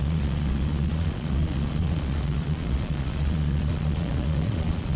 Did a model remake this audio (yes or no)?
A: yes